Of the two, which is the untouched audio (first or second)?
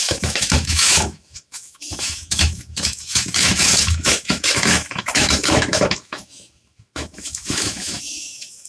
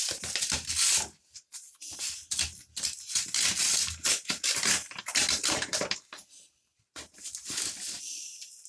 second